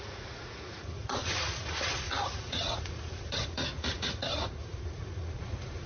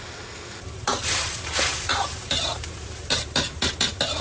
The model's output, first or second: first